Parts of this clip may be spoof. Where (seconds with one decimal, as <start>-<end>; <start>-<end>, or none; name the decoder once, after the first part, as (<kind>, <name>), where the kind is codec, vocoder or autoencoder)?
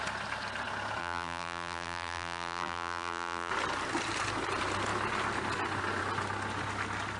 1.0-3.5 (vocoder, BigVGAN v2)